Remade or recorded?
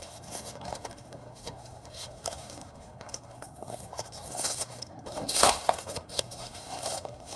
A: remade